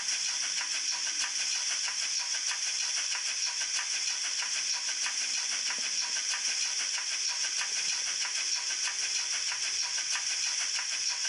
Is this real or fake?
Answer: real